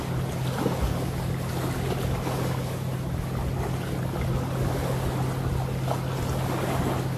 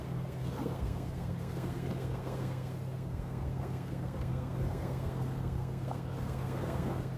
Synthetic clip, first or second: second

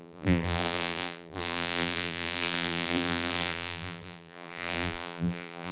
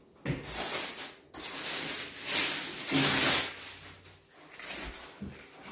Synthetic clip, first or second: first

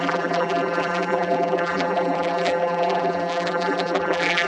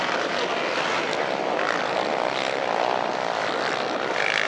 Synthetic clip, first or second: first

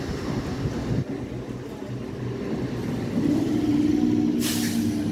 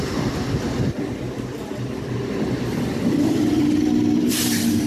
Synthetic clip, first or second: second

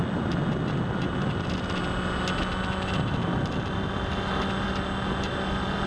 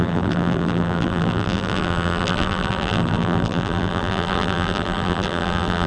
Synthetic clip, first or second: second